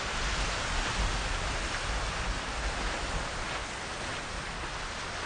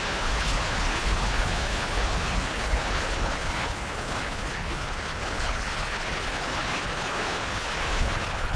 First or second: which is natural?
first